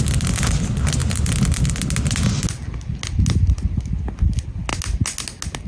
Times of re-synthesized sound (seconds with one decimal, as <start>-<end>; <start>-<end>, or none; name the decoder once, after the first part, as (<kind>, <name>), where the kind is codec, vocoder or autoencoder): none